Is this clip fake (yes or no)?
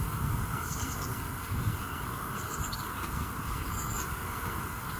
yes